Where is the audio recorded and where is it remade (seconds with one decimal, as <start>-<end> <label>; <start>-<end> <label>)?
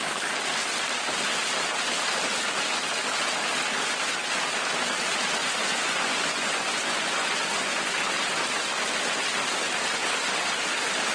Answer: 0.0-5.4 recorded; 5.4-8.0 remade; 8.0-9.9 recorded; 9.9-10.4 remade; 10.4-11.1 recorded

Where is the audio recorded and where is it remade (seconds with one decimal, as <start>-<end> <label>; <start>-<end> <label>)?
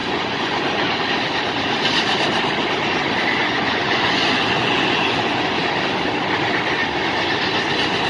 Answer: 0.0-1.0 remade; 1.0-3.4 recorded; 3.4-5.6 remade; 5.6-8.1 recorded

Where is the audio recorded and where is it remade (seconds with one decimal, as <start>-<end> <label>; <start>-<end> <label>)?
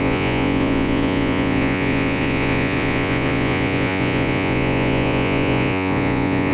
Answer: 0.0-6.5 remade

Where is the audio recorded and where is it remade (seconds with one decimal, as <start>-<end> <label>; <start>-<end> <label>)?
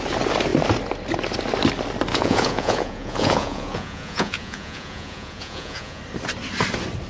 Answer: 0.0-2.1 recorded; 2.1-6.0 remade; 6.0-7.1 recorded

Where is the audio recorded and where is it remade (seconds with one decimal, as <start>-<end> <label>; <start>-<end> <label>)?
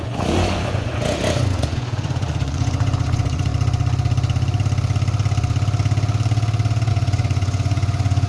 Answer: 0.0-3.5 remade; 3.5-6.9 recorded; 6.9-8.3 remade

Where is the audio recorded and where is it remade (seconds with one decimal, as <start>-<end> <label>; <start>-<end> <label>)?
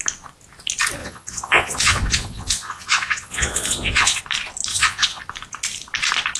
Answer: 0.0-1.0 recorded; 1.0-4.2 remade; 4.2-4.7 recorded; 4.7-5.2 remade; 5.2-6.4 recorded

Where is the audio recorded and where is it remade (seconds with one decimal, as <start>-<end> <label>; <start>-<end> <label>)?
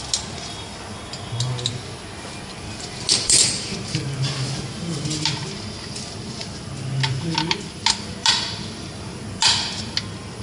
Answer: 0.0-10.4 recorded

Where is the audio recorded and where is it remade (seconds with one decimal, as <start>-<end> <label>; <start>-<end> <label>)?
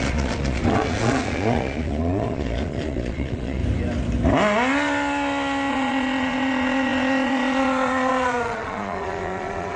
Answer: 0.0-3.6 remade; 3.6-5.7 recorded; 5.7-9.8 remade